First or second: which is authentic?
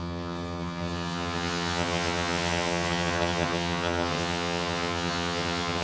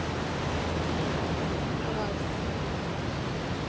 second